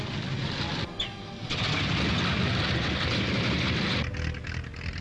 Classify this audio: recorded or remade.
recorded